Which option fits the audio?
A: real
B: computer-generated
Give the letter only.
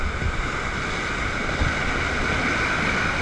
A